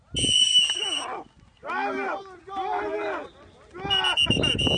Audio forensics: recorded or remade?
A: recorded